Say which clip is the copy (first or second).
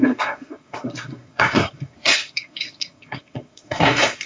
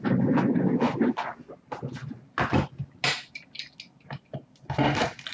first